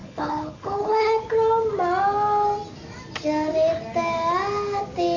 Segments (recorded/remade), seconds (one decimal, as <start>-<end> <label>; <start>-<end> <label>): 0.0-1.2 remade; 1.2-5.2 recorded